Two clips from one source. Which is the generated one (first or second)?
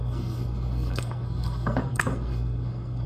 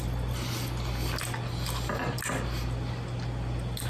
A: first